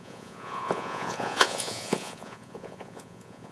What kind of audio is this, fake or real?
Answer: fake